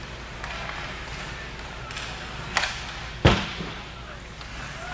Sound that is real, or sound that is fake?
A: real